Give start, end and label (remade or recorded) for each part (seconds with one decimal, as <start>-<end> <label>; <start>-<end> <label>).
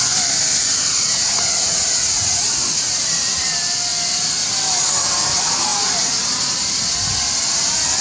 0.0-0.6 recorded; 0.6-3.0 remade; 3.0-8.0 recorded